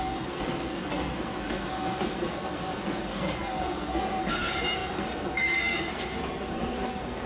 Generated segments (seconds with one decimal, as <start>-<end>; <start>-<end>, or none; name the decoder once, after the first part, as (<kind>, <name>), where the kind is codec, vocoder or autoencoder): 0.0-7.3 (codec, SNAC)